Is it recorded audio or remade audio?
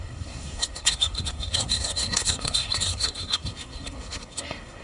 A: remade